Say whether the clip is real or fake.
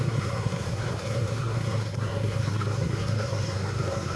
fake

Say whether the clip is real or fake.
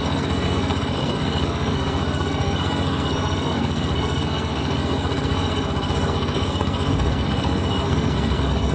fake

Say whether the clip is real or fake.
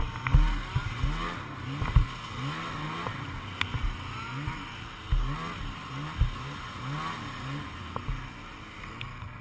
real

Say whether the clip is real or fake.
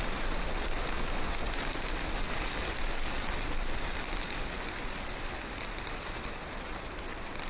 real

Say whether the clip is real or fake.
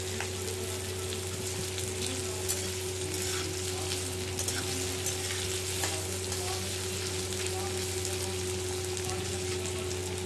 real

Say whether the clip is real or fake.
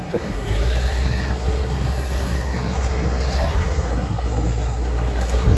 fake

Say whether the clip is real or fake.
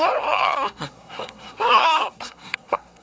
fake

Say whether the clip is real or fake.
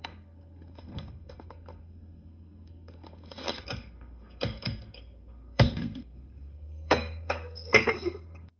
fake